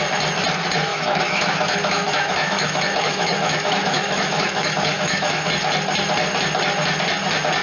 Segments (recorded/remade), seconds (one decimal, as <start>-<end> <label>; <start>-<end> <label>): 0.0-0.9 recorded; 0.9-5.5 remade; 5.5-7.6 recorded